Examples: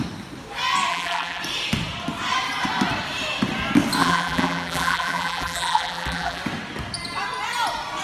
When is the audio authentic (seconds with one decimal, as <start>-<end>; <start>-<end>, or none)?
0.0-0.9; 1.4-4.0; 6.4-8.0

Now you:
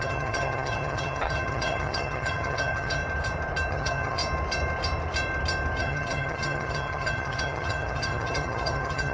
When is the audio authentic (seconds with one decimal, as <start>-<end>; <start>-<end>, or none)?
3.0-3.7; 4.2-5.8

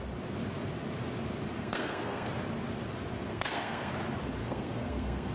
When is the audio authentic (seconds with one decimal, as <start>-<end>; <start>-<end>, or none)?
0.0-1.6; 2.3-3.3; 3.9-4.4

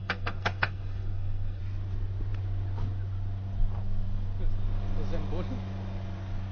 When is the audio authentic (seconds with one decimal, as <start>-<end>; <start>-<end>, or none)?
1.6-6.5

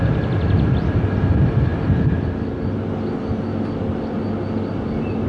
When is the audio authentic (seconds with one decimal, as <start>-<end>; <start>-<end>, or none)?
0.0-5.3

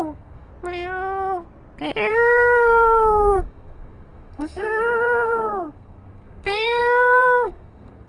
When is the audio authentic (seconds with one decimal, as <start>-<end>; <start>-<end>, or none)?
0.5-2.1